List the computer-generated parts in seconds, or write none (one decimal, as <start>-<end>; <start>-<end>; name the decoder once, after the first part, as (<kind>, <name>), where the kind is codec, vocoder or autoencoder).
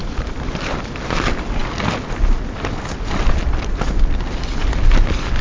none